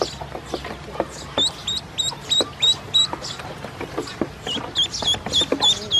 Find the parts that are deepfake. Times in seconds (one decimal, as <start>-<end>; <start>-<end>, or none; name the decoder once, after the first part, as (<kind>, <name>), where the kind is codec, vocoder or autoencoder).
none